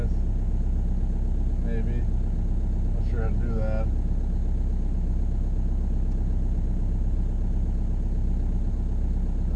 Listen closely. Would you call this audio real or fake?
real